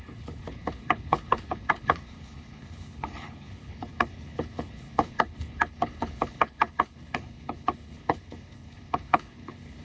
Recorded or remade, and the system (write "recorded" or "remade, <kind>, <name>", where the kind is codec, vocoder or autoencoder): remade, codec, HILCodec